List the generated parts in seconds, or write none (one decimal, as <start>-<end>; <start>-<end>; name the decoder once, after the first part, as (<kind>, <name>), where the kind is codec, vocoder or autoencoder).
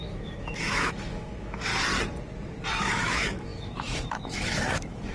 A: 0.0-1.7 (autoencoder, DAC-VAE); 2.8-5.1